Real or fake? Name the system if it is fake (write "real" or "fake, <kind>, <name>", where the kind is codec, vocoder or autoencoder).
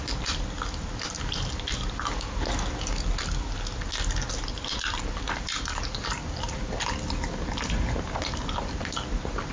real